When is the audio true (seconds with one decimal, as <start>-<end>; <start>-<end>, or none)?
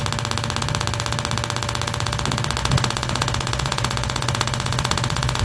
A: 0.0-2.6